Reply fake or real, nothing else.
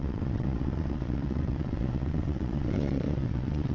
fake